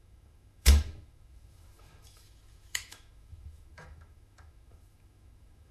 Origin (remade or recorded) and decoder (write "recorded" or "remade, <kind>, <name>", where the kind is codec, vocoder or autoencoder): remade, autoencoder, DAC-VAE